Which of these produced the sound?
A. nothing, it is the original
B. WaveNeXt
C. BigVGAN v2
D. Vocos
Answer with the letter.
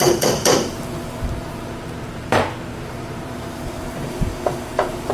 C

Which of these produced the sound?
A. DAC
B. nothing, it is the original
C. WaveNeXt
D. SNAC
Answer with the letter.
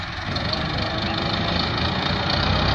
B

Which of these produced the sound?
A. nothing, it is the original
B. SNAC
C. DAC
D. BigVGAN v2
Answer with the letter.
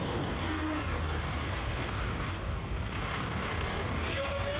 C